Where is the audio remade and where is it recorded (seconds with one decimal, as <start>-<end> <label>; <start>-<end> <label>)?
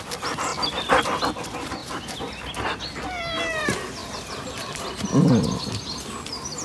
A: 0.0-1.8 recorded; 1.8-2.3 remade; 2.3-4.0 recorded; 4.0-5.6 remade; 5.6-6.6 recorded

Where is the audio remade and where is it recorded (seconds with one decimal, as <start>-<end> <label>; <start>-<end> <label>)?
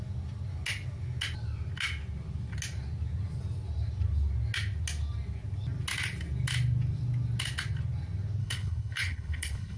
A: 0.0-8.4 recorded; 8.4-9.8 remade